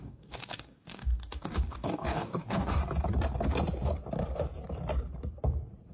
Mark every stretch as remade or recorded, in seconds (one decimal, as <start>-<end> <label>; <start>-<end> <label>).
0.0-2.8 remade; 2.8-5.9 recorded